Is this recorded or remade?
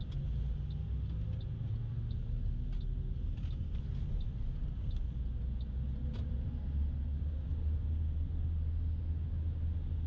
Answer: recorded